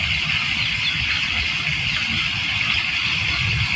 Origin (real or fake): real